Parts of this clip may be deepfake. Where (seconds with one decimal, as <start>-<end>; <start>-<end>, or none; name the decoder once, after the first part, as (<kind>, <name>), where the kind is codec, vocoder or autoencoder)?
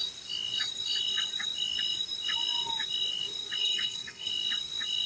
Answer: 3.6-4.3 (codec, HILCodec)